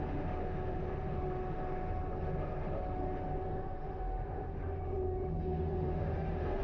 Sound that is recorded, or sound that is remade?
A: remade